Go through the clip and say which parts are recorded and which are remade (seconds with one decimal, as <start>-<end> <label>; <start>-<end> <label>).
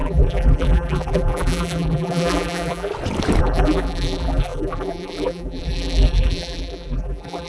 0.0-2.9 remade; 2.9-3.4 recorded; 3.4-7.5 remade